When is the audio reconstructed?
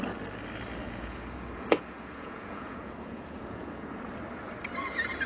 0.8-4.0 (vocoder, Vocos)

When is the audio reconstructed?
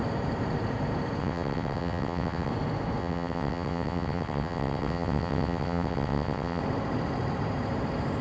1.2-2.5 (vocoder, WaveNeXt); 3.0-6.6